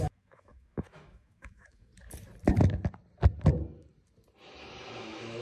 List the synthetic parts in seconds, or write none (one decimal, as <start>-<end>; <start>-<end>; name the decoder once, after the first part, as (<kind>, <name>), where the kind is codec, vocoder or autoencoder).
0.0-1.9 (autoencoder, DAC-VAE); 5.0-5.4

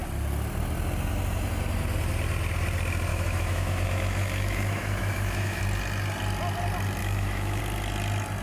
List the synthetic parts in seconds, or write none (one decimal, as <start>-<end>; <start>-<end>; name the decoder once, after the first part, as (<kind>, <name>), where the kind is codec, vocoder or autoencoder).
3.1-5.6 (autoencoder, DAC-VAE); 7.0-7.6